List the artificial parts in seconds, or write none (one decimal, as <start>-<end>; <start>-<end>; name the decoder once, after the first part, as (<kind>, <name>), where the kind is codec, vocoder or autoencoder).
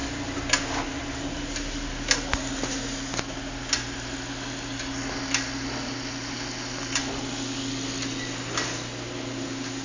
none